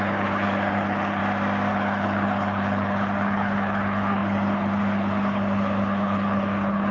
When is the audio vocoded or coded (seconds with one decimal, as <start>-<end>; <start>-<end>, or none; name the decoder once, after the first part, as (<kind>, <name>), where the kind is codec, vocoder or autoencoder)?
0.0-1.2 (codec, HILCodec); 1.7-6.9